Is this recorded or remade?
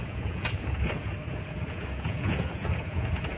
remade